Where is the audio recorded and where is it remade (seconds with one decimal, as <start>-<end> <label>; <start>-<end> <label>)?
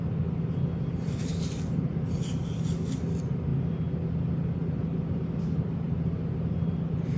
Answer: 0.0-7.2 recorded